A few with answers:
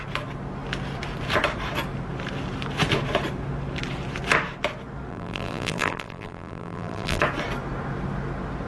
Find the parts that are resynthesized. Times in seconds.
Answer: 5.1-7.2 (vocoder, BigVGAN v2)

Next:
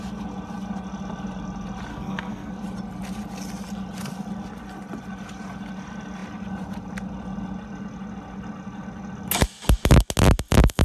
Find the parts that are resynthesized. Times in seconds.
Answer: 1.9-2.5 (codec, SNAC)

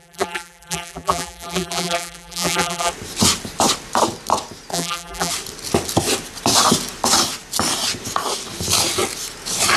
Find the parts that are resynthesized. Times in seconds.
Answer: 0.0-2.9 (vocoder, BigVGAN v2); 4.7-5.3